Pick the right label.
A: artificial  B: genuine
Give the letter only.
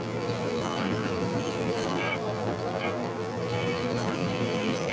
A